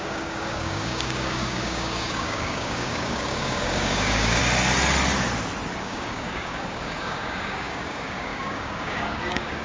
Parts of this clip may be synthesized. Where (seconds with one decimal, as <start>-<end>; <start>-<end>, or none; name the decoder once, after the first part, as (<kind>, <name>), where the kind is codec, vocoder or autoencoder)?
0.0-4.4 (codec, DAC); 5.8-9.6